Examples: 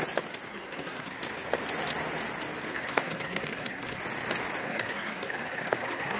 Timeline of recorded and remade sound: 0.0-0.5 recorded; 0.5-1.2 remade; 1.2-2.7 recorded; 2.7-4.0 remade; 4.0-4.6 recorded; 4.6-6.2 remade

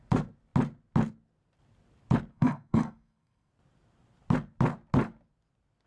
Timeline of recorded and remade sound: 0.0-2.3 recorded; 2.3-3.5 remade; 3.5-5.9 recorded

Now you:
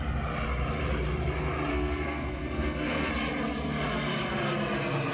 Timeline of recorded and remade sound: 0.0-1.7 recorded; 1.7-3.1 remade; 3.1-5.1 recorded